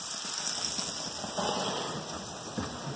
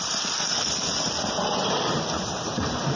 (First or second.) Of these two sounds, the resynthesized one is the second